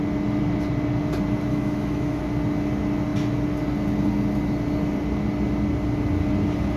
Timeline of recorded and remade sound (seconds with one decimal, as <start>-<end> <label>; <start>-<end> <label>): 0.0-1.5 recorded; 1.5-2.2 remade; 2.2-6.8 recorded